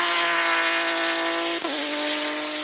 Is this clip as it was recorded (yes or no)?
yes